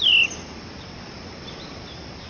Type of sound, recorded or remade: recorded